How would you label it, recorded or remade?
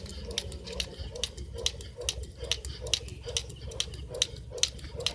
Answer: recorded